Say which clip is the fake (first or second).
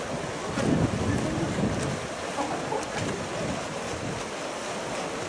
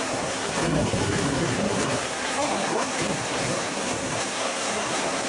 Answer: second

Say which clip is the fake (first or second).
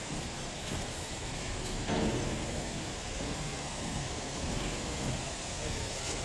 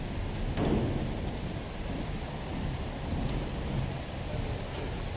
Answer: first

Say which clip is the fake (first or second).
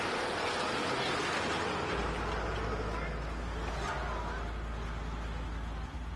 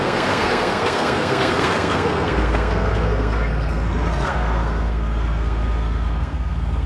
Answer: second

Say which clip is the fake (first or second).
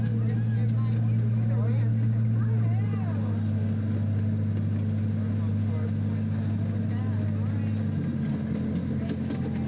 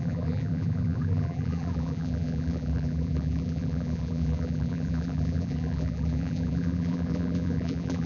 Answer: second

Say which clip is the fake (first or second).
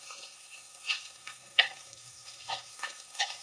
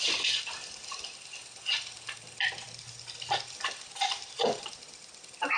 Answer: first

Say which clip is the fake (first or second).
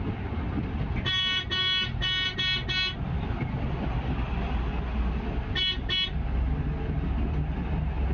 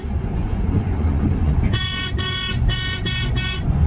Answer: second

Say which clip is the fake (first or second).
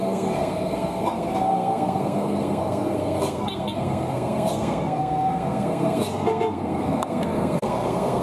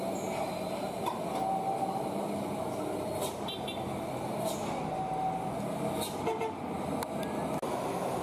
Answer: first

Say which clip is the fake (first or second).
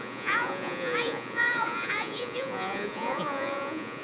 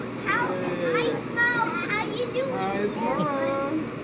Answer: first